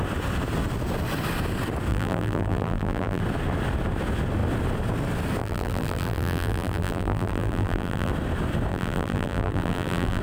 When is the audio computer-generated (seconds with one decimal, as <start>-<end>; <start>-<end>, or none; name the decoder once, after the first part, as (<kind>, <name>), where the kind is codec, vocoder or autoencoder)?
1.9-3.2 (vocoder, BigVGAN v2); 5.4-8.1; 8.7-10.2